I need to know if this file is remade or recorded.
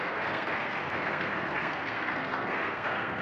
remade